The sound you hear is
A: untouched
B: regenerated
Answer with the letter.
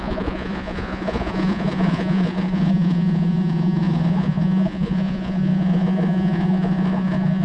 B